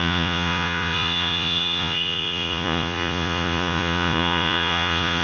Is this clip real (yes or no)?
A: no